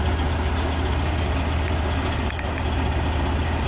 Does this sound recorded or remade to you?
recorded